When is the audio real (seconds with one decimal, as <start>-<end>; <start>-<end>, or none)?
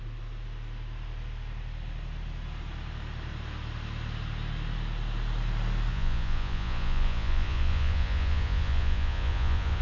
0.0-5.9